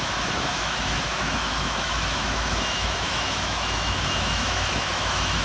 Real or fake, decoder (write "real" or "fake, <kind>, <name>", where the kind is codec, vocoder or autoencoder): fake, autoencoder, DAC-VAE